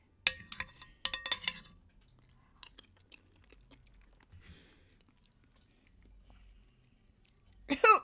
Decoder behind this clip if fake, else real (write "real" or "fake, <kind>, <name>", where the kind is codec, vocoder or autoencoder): real